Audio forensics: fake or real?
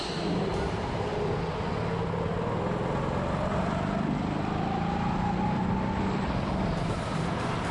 real